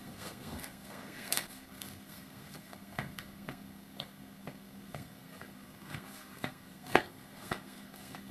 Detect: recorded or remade remade